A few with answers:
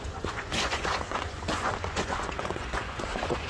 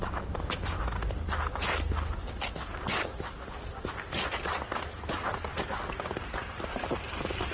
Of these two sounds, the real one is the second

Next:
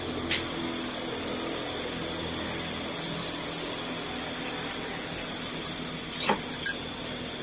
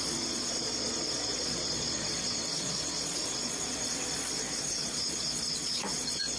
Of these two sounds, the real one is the first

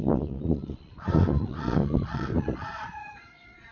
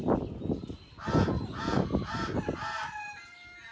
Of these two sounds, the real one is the second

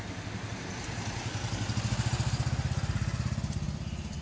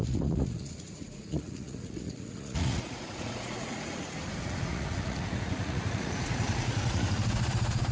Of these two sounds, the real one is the first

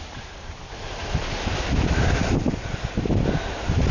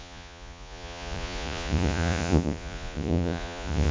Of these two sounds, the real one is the first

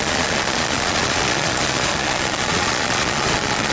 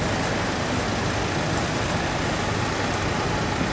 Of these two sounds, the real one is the second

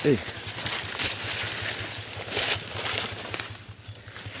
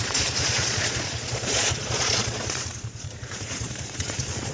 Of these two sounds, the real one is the first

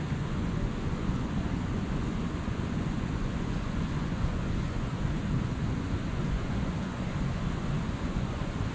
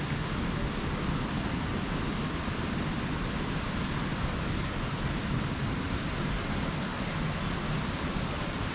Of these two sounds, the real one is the second